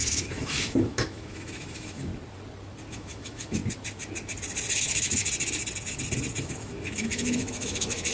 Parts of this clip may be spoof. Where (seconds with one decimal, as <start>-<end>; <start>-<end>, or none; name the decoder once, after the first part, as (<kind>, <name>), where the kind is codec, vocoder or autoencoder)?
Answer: 0.0-2.1 (autoencoder, DAC-VAE); 2.9-3.6; 4.8-5.2; 6.4-8.1